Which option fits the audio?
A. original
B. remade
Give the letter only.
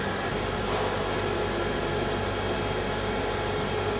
A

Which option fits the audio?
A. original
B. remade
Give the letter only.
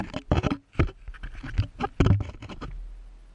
A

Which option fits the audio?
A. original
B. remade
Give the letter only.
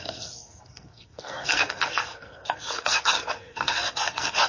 B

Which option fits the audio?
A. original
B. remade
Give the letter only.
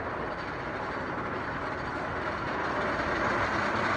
A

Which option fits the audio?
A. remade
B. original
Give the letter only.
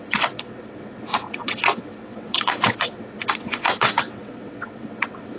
A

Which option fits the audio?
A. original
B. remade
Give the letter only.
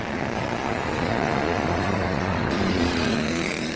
B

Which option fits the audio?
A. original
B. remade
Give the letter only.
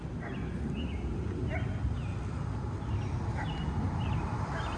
A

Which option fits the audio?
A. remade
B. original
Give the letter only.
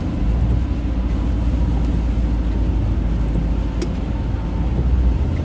B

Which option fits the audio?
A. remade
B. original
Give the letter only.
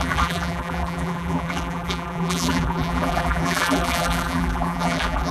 A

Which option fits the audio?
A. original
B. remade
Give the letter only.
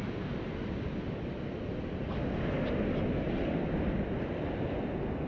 A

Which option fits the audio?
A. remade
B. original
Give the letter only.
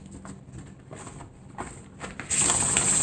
B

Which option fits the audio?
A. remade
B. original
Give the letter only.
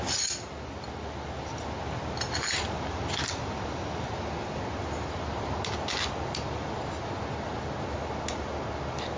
B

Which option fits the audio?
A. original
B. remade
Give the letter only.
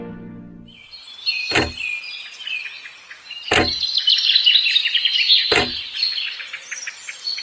A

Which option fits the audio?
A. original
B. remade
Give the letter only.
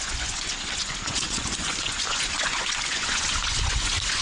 B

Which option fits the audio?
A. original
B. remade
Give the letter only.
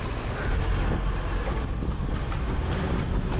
A